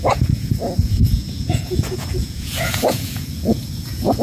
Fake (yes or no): yes